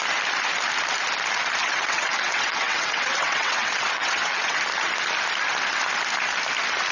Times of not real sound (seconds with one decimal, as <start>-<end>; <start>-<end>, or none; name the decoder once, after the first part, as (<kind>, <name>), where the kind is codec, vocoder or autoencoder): 1.6-4.6 (vocoder, WaveNeXt)